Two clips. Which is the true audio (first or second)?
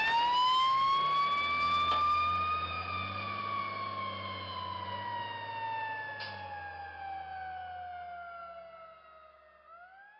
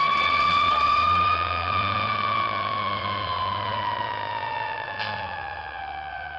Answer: first